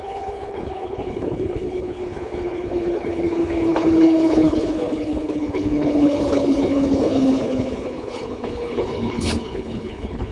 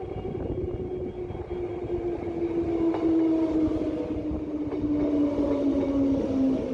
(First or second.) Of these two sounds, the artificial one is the first